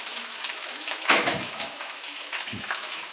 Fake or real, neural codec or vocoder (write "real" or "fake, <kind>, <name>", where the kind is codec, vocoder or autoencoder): fake, autoencoder, DAC-VAE